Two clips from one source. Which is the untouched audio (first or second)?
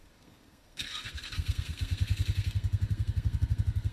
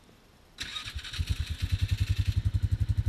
second